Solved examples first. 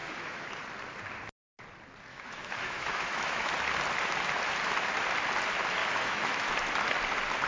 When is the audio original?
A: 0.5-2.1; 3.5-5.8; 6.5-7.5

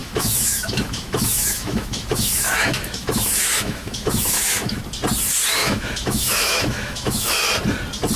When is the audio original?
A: 4.8-5.6; 7.4-8.2

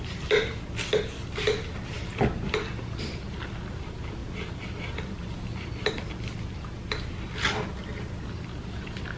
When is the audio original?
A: 0.0-9.2

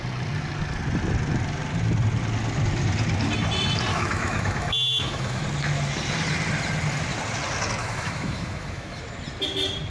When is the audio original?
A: 0.0-3.9; 5.4-7.8; 9.0-9.9

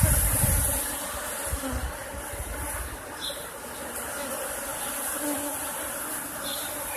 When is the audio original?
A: 0.0-7.0

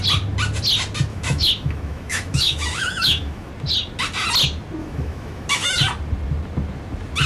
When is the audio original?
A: 0.0-1.1; 3.5-4.8; 5.8-7.3

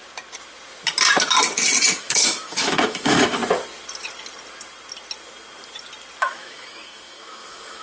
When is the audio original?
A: 0.0-2.0; 3.4-6.2

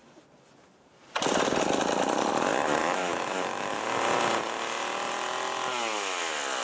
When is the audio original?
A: 0.0-2.8; 3.8-6.6